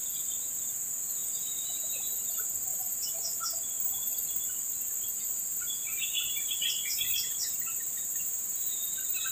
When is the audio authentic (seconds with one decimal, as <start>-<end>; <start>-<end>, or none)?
0.0-1.2; 2.3-2.7; 3.4-5.9; 8.8-9.3

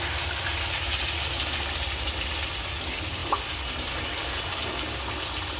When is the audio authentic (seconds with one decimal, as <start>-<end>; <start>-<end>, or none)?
0.0-5.6

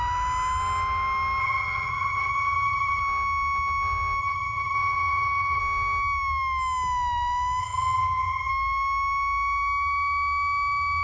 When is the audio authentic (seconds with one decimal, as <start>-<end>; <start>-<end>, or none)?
0.0-1.4; 3.0-4.2; 5.6-7.6; 8.5-11.0